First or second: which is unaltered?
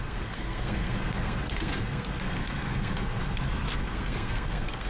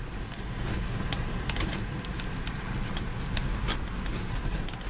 second